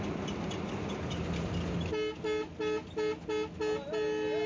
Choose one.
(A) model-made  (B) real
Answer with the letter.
B